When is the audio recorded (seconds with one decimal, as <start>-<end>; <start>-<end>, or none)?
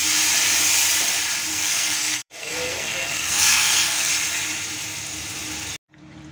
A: 0.0-1.5; 4.1-6.3